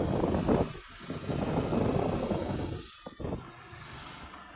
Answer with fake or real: real